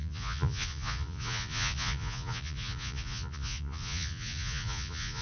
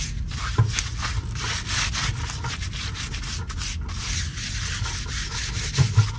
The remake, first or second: first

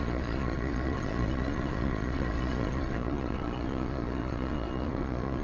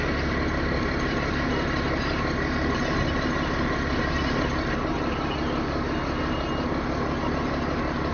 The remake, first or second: first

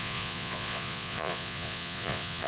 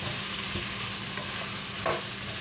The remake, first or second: first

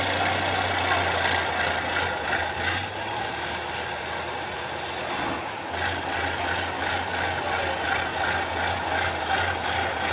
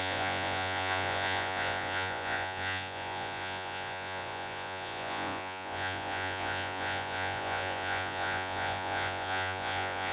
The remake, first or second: second